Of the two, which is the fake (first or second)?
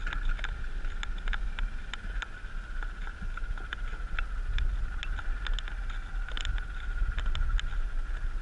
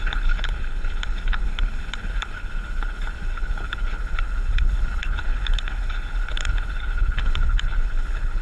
second